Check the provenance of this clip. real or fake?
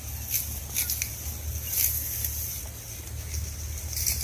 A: real